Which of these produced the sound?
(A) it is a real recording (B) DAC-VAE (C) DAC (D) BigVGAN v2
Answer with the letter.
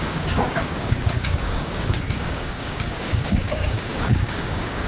C